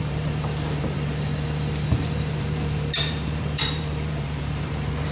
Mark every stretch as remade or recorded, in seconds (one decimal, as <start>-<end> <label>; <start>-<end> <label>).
0.0-1.3 remade; 1.3-1.9 recorded; 1.9-5.1 remade

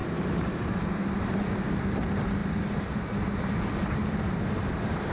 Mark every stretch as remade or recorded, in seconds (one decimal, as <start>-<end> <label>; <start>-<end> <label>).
0.0-1.2 remade; 1.2-2.4 recorded; 2.4-5.1 remade

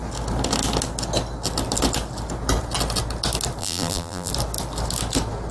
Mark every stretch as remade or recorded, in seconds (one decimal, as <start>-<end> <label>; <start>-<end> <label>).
0.0-3.6 recorded; 3.6-4.3 remade; 4.3-5.5 recorded

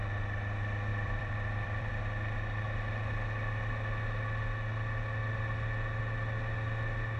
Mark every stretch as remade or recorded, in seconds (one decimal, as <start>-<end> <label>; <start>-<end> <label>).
0.0-0.9 recorded; 0.9-1.9 remade; 1.9-7.2 recorded

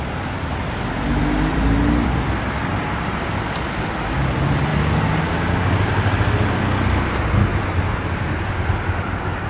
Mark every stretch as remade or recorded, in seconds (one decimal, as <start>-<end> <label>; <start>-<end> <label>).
0.0-1.5 recorded; 1.5-2.4 remade; 2.4-7.5 recorded; 7.5-8.1 remade; 8.1-9.5 recorded

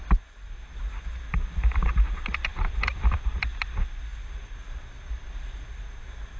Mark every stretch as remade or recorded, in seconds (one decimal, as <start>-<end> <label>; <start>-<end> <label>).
0.0-6.4 recorded

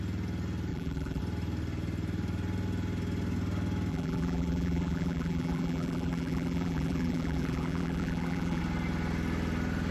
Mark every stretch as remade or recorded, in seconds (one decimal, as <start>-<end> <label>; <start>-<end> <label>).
0.0-0.7 recorded; 0.7-1.2 remade; 1.2-3.9 recorded; 3.9-8.6 remade; 8.6-9.9 recorded